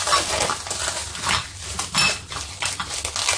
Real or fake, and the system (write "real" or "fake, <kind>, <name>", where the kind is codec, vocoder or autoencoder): real